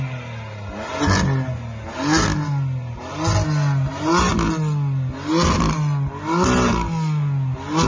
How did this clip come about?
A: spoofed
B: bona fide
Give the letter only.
B